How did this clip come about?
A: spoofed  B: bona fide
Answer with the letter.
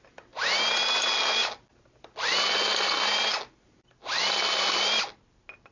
B